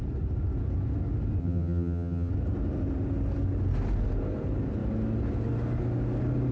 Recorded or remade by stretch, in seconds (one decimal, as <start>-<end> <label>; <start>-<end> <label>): 0.0-1.4 recorded; 1.4-2.3 remade; 2.3-6.5 recorded